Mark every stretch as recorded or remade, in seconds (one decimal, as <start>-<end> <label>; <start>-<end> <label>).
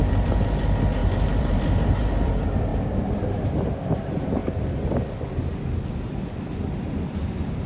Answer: 0.0-1.0 recorded; 1.0-2.1 remade; 2.1-2.7 recorded; 2.7-3.5 remade; 3.5-7.7 recorded